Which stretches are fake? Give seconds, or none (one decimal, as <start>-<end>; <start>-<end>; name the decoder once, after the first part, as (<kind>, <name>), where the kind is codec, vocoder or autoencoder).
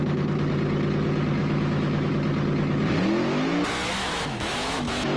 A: 1.4-2.1 (autoencoder, DAC-VAE); 4.0-5.2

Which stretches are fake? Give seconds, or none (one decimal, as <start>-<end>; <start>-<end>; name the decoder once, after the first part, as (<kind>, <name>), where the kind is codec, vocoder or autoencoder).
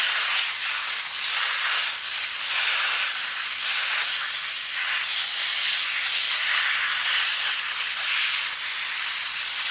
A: none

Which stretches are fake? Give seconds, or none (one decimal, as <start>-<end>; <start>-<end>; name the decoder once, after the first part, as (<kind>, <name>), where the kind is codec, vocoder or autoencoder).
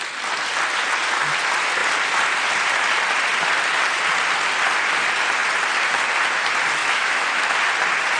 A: 6.8-7.4 (autoencoder, DAC-VAE)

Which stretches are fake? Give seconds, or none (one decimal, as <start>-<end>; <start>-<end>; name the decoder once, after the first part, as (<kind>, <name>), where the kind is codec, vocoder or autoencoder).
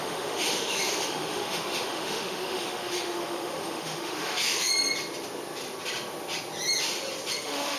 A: 0.0-4.7 (autoencoder, DAC-VAE); 7.3-7.8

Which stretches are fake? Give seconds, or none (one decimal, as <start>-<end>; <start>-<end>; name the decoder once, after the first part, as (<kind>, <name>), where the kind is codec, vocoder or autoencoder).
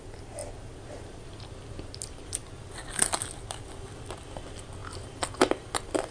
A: none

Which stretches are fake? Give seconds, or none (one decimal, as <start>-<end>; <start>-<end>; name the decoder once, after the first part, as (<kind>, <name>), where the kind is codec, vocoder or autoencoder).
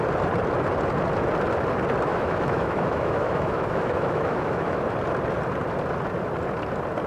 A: 2.1-4.8 (autoencoder, DAC-VAE)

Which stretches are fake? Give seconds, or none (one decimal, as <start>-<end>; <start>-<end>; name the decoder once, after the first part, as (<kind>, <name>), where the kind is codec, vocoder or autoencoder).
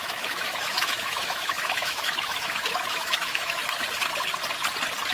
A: 0.0-3.6 (autoencoder, DAC-VAE)